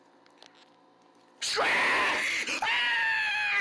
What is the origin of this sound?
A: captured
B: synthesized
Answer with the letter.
A